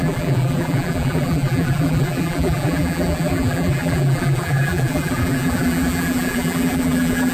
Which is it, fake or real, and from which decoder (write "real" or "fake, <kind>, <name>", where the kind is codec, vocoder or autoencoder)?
fake, vocoder, BigVGAN v2